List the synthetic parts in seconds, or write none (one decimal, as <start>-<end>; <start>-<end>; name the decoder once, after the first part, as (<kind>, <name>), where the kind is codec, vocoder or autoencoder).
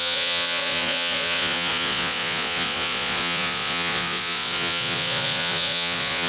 0.0-6.3 (vocoder, Vocos)